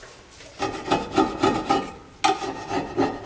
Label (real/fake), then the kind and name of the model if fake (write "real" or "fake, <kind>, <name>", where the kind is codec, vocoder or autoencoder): real